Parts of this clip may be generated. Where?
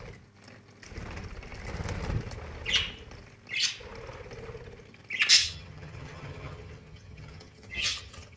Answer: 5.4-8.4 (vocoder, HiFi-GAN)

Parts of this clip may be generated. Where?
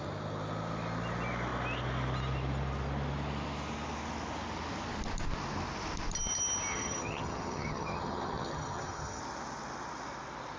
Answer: 6.7-9.2 (vocoder, HiFi-GAN)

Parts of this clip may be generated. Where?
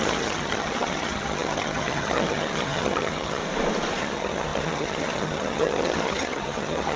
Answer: 0.0-3.4 (vocoder, HiFi-GAN); 4.0-7.0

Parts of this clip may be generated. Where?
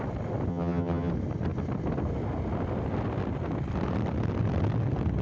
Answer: 0.5-1.1 (vocoder, HiFi-GAN)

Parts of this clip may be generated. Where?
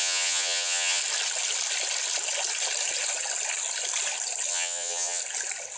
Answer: 0.0-1.0 (vocoder, HiFi-GAN); 4.5-5.2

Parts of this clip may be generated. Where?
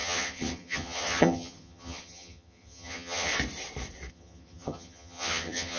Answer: 0.0-3.3 (vocoder, HiFi-GAN); 4.1-5.8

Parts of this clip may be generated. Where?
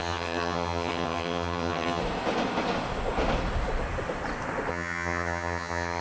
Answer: 0.0-2.0 (vocoder, HiFi-GAN); 4.7-6.0